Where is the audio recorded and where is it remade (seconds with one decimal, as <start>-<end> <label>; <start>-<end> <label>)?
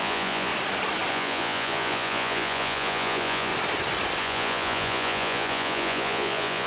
0.0-0.5 remade; 0.5-1.1 recorded; 1.1-3.5 remade; 3.5-4.2 recorded; 4.2-6.7 remade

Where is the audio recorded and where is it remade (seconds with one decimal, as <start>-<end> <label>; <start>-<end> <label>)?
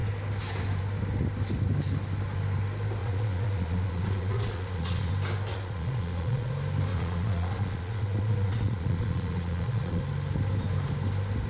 0.0-3.0 recorded; 3.0-5.1 remade; 5.1-5.5 recorded; 5.5-6.5 remade; 6.5-6.9 recorded; 6.9-10.0 remade; 10.0-11.5 recorded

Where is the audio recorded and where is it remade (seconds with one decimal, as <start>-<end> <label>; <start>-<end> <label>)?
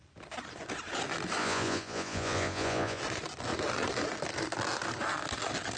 0.0-1.4 recorded; 1.4-3.0 remade; 3.0-5.8 recorded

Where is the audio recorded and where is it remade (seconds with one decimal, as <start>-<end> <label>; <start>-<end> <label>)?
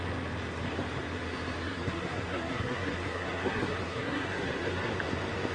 0.0-1.6 recorded; 1.6-4.9 remade; 4.9-5.5 recorded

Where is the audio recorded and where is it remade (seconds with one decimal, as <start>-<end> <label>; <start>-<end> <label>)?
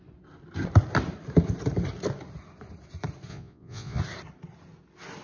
0.0-3.3 recorded; 3.3-4.0 remade; 4.0-5.2 recorded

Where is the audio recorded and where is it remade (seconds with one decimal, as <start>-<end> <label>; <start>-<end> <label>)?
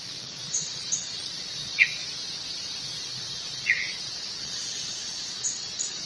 0.0-2.0 remade; 2.0-2.8 recorded; 2.8-6.1 remade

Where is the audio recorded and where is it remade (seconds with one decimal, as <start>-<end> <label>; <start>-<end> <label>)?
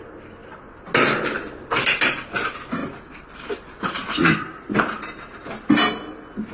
0.0-6.5 recorded